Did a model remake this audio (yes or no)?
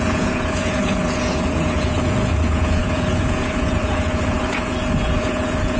yes